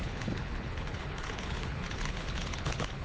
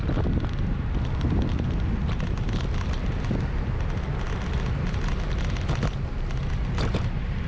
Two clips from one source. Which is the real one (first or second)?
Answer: second